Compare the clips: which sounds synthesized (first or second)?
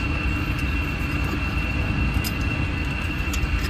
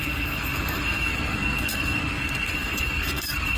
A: second